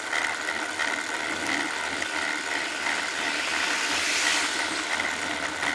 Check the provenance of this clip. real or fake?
real